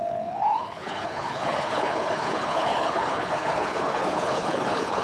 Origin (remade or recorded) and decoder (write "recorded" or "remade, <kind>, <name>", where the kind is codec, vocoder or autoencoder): remade, codec, HILCodec